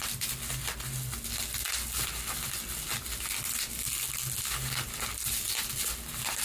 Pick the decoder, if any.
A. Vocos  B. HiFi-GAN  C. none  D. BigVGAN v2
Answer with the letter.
C